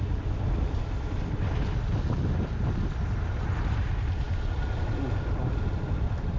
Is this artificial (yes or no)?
no